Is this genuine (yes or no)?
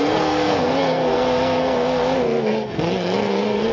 no